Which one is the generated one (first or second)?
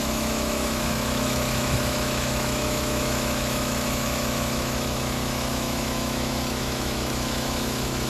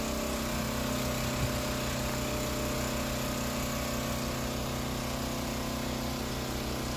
first